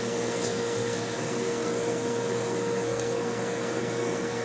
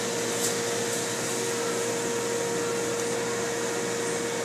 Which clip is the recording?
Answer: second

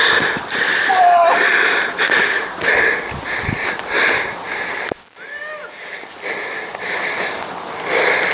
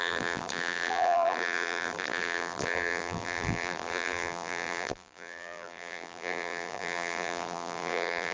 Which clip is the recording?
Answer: first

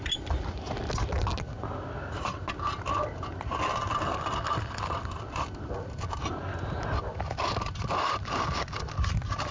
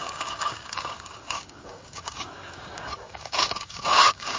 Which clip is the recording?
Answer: first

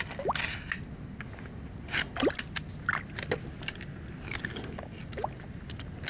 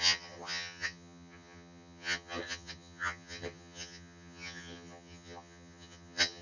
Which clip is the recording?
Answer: first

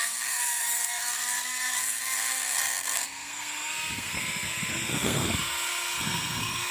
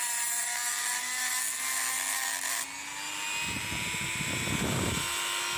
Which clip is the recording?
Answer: second